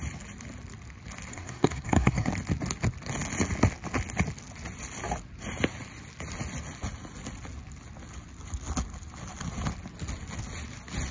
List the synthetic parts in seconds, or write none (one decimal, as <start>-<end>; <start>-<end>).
1.3-2.3